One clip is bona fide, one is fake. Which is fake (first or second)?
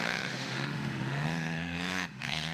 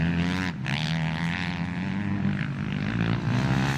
first